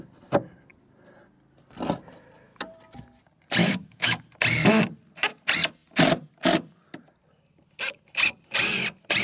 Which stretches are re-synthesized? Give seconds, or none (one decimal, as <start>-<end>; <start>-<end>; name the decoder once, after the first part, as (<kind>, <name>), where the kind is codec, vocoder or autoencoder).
3.6-4.2 (autoencoder, DAC-VAE)